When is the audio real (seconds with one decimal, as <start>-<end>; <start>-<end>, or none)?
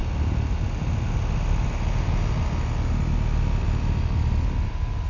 0.0-5.1